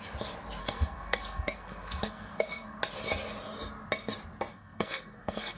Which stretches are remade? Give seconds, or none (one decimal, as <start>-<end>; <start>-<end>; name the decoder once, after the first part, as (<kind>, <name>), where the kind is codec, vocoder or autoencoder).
0.6-2.8 (codec, SNAC); 4.5-5.6